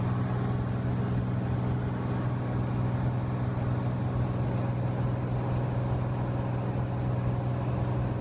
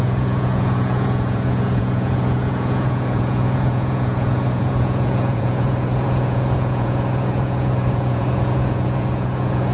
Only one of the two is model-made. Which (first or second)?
second